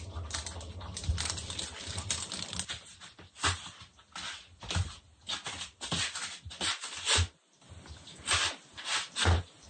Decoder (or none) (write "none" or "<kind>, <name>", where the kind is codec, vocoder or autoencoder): none